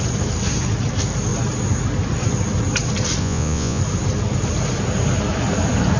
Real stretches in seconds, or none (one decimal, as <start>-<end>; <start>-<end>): 0.0-3.2; 3.8-6.0